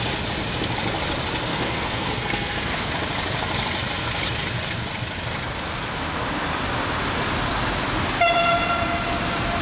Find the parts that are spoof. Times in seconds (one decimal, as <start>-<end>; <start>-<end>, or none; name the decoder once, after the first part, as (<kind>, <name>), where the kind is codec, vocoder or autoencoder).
1.5-2.9 (codec, SNAC)